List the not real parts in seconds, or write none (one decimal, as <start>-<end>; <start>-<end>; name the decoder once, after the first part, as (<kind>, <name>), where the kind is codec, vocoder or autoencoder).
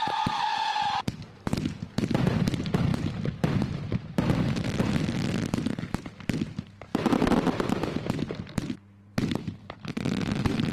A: 0.5-1.4 (vocoder, BigVGAN v2); 2.9-5.3; 6.9-8.0; 9.1-10.7